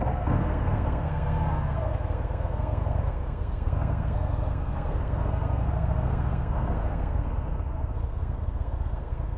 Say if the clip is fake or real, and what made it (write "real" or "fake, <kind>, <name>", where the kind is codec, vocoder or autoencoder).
fake, codec, SNAC